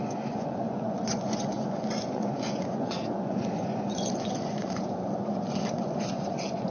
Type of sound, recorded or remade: remade